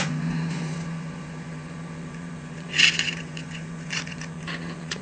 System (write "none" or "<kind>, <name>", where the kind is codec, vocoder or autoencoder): vocoder, Vocos